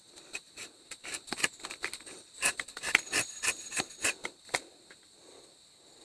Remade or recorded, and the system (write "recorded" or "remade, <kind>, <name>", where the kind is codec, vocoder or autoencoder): recorded